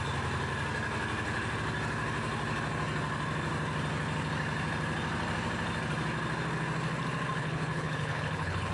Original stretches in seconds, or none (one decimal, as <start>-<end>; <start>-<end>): 0.0-7.4